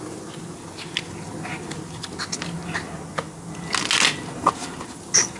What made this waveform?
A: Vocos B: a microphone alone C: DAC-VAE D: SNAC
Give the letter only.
B